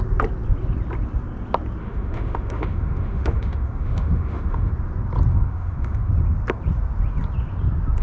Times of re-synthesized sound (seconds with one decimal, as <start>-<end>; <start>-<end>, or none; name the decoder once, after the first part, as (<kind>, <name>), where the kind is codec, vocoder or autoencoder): 1.8-4.7 (autoencoder, DAC-VAE); 5.3-6.1